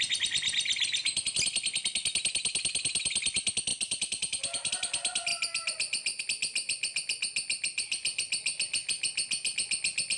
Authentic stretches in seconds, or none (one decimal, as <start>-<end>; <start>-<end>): 0.0-3.7; 4.7-10.2